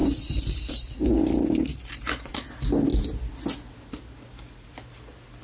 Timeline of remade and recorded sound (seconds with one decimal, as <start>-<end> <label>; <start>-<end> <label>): 0.0-0.9 remade; 0.9-1.7 recorded; 1.7-2.5 remade; 2.5-5.4 recorded